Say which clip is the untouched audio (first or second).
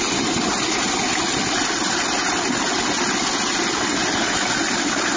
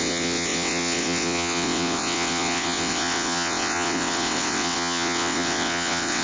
first